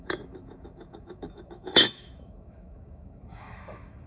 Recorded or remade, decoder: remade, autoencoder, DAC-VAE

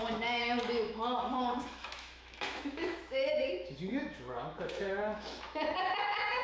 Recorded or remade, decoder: remade, autoencoder, DAC-VAE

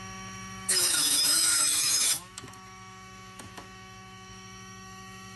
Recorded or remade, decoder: remade, autoencoder, DAC-VAE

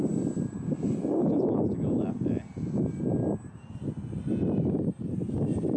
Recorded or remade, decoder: recorded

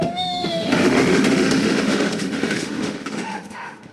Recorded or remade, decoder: remade, autoencoder, DAC-VAE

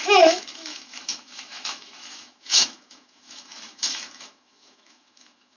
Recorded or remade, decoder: remade, autoencoder, DAC-VAE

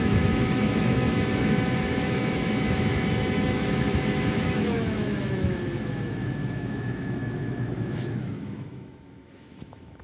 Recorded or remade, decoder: remade, autoencoder, DAC-VAE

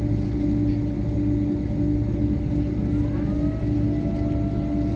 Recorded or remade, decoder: recorded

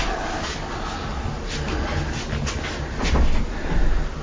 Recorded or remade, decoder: recorded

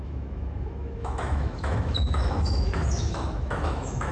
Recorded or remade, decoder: remade, autoencoder, DAC-VAE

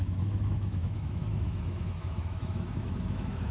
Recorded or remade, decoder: remade, autoencoder, DAC-VAE